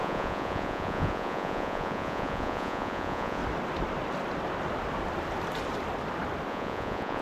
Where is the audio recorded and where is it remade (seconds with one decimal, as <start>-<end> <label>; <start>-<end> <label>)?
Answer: 0.0-3.4 remade; 3.4-6.5 recorded; 6.5-7.2 remade